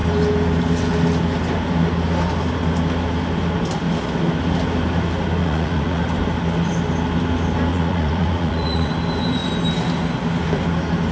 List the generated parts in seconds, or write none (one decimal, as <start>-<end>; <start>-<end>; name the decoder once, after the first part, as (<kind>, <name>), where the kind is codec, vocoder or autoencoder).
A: 5.4-6.0 (vocoder, Vocos); 7.7-8.9